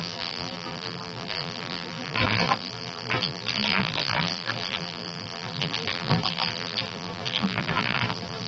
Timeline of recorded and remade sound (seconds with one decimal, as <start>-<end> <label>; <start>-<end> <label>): 0.0-8.5 remade